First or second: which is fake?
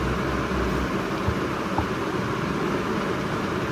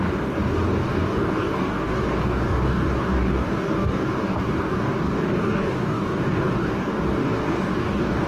second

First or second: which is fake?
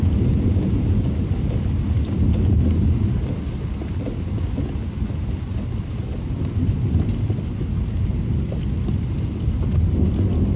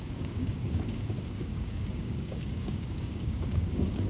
second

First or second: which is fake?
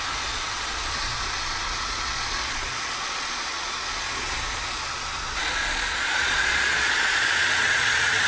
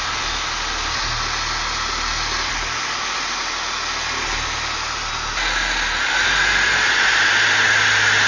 first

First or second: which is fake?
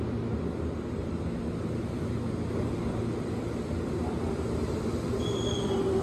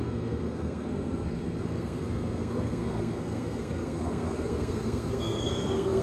second